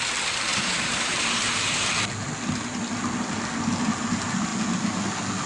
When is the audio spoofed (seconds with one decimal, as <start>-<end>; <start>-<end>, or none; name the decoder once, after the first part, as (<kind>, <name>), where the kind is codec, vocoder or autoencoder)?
0.5-1.9 (vocoder, BigVGAN v2)